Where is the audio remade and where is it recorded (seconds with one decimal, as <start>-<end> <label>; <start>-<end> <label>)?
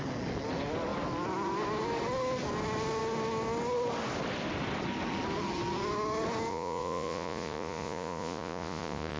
0.0-6.5 recorded; 6.5-9.2 remade